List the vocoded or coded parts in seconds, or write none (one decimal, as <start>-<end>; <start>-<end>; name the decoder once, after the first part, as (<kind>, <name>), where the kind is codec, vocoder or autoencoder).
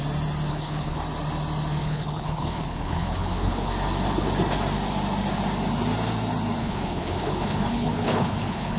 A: 0.5-1.0 (codec, HILCodec); 1.8-3.7; 6.6-8.8